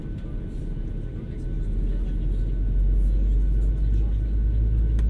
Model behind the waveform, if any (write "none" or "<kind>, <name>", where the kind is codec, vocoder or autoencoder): none